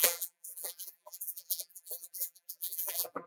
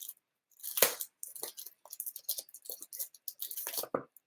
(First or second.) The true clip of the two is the second